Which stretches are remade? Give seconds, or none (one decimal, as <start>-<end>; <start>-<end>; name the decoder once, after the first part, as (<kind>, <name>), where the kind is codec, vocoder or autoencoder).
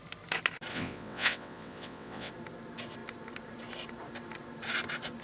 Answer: 0.7-2.3 (vocoder, WaveNeXt)